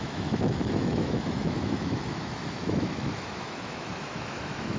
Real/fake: fake